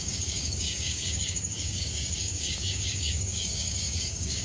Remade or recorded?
remade